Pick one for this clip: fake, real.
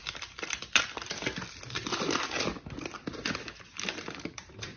real